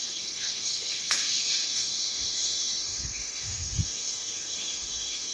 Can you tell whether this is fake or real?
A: fake